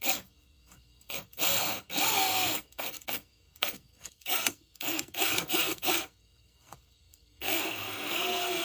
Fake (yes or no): yes